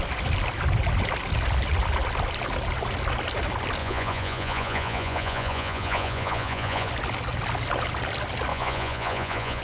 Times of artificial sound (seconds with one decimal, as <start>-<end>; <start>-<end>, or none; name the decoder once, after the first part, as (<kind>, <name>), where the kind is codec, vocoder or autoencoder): 3.8-6.9 (vocoder, Vocos); 8.5-9.6